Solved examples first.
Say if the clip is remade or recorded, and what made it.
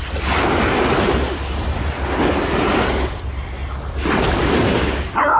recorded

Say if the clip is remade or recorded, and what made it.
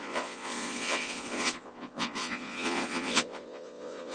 remade, vocoder, Vocos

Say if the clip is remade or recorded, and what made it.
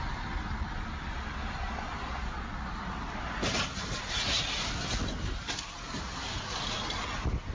recorded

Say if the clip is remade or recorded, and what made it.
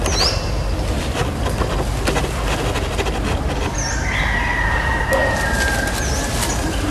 recorded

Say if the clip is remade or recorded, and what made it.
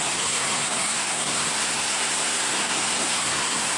remade, codec, SNAC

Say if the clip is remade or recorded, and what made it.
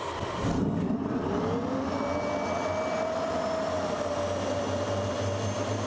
recorded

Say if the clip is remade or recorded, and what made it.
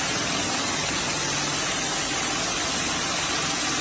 recorded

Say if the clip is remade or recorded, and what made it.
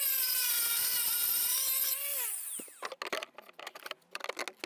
recorded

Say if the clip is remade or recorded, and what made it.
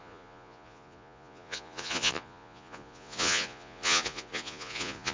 remade, vocoder, Vocos